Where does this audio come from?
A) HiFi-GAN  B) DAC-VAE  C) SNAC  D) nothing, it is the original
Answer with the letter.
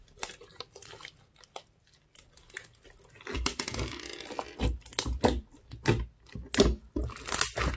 D